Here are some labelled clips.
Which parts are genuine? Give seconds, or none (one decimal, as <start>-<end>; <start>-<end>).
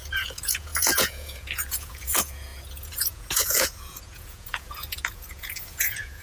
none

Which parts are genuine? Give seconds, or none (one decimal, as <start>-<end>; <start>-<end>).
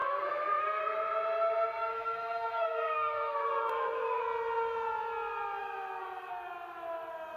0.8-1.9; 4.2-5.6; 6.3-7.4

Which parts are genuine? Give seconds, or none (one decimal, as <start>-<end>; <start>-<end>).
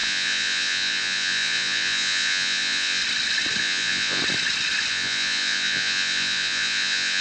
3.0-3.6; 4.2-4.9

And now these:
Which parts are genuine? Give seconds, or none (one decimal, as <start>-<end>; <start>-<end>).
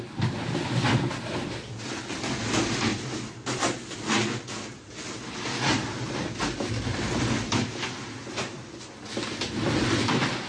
0.0-10.5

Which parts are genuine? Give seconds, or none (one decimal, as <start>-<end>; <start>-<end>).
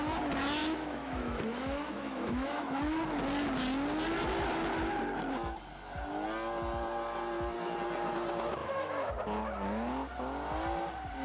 0.0-0.6; 2.8-8.6; 9.1-11.2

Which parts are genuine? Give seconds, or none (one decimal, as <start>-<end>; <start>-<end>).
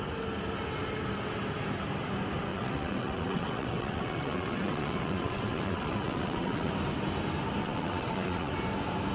0.0-2.5; 6.7-7.6; 8.5-9.1